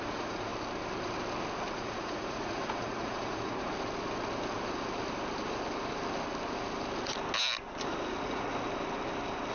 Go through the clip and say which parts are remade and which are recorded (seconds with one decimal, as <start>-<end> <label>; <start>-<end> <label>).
0.0-0.5 remade; 0.5-1.7 recorded; 1.7-3.7 remade; 3.7-8.1 recorded; 8.1-8.5 remade; 8.5-9.5 recorded